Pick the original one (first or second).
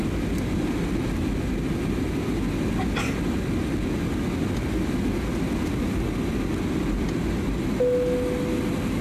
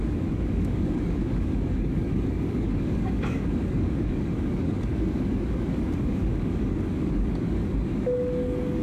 first